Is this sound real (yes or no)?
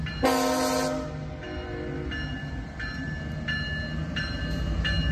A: yes